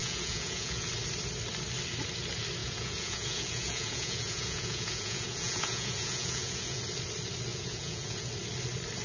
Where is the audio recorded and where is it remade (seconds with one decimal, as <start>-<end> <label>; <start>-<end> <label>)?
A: 0.0-0.9 remade; 0.9-2.6 recorded; 2.6-6.8 remade; 6.8-7.5 recorded; 7.5-8.3 remade; 8.3-9.0 recorded